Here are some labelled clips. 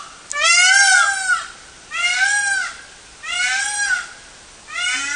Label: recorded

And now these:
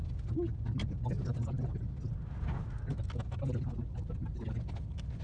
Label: recorded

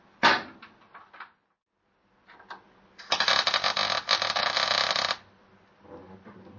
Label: recorded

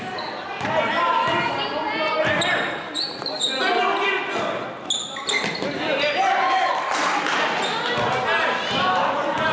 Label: recorded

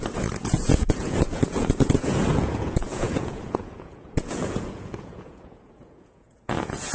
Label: remade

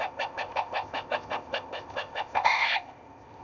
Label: remade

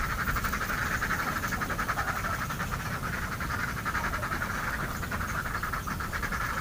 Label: recorded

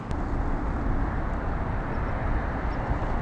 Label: recorded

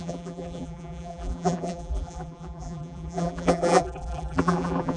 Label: remade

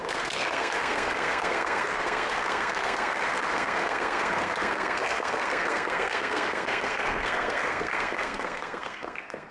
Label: remade